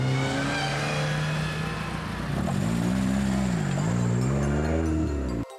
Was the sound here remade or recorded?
recorded